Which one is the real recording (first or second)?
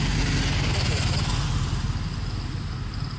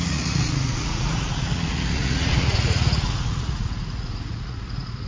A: first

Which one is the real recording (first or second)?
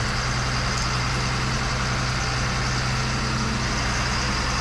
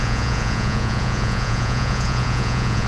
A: first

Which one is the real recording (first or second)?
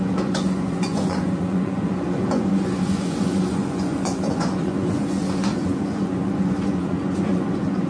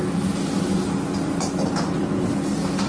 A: second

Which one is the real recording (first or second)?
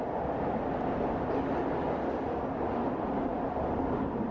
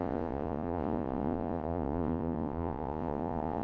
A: first